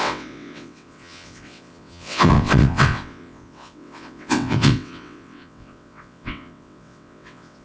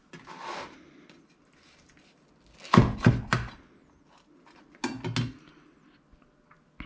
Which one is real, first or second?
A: second